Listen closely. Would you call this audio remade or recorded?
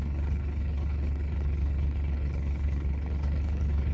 remade